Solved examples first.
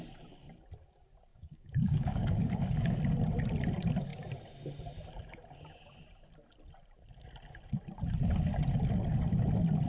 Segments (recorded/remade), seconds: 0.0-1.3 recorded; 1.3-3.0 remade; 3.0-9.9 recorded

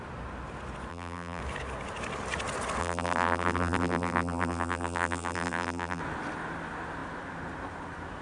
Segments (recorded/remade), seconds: 0.0-0.9 recorded; 0.9-1.4 remade; 1.4-2.8 recorded; 2.8-6.0 remade; 6.0-8.2 recorded

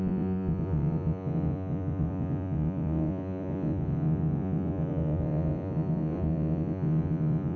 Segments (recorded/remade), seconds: 0.0-7.6 remade

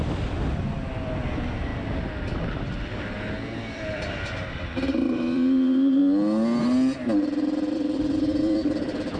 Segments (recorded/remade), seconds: 0.0-1.7 remade; 1.7-3.6 recorded; 3.6-6.0 remade; 6.0-6.6 recorded; 6.6-9.2 remade

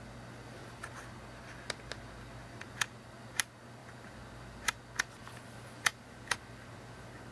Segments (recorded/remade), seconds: 0.0-7.3 recorded

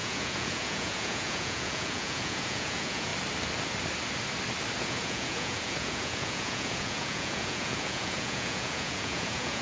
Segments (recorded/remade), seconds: 0.0-3.1 remade; 3.1-4.8 recorded; 4.8-9.6 remade